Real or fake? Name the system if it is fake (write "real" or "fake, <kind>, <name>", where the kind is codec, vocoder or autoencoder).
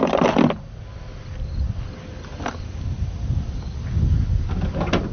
real